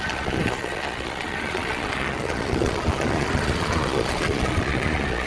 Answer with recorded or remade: remade